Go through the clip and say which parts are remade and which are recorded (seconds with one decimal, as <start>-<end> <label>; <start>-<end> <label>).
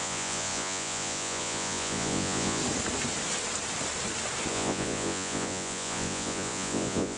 0.0-2.6 remade; 2.6-4.5 recorded; 4.5-7.2 remade